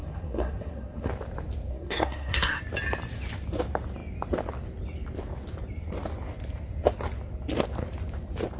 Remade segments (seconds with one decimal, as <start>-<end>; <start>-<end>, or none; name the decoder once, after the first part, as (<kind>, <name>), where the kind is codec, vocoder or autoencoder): 0.0-1.1 (codec, SNAC); 1.7-2.6

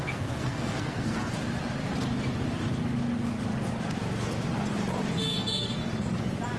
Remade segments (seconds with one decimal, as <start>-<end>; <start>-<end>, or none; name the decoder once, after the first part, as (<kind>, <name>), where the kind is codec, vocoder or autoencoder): 0.0-1.3 (codec, SNAC); 5.2-5.8

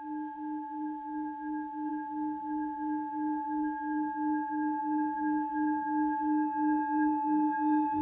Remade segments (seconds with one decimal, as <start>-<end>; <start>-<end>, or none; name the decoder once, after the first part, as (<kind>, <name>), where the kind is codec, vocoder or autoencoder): 0.0-8.0 (codec, SNAC)

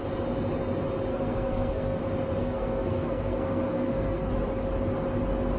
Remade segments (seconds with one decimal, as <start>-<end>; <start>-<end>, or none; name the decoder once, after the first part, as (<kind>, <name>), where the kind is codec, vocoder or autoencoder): 1.1-2.0 (codec, SNAC); 2.4-4.3

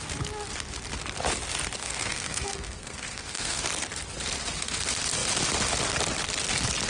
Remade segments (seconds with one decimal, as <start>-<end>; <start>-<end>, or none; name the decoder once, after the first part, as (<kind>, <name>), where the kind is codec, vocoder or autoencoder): 1.8-3.6 (codec, SNAC)

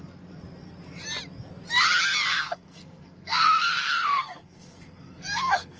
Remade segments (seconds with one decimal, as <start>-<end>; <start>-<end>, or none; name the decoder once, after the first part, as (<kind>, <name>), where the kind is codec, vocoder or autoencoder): 2.3-5.8 (codec, SNAC)

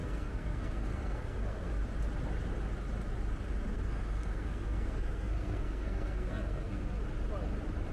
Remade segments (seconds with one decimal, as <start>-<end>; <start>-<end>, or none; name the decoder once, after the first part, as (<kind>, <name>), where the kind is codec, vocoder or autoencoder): 0.0-1.8 (codec, SNAC); 3.7-7.0

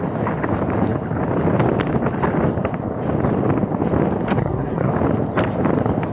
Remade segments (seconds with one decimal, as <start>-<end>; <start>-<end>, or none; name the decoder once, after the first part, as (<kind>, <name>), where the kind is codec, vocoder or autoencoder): 4.3-4.9 (codec, SNAC)